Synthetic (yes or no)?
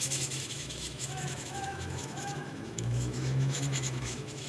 yes